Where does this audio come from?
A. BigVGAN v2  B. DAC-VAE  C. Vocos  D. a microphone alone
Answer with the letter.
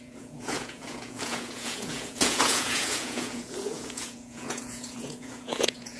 C